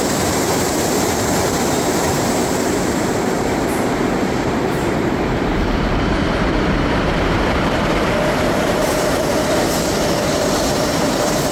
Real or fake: fake